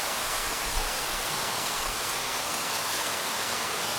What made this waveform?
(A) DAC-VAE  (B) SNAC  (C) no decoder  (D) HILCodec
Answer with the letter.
B